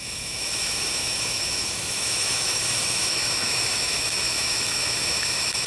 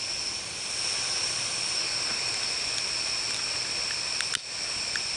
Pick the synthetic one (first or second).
first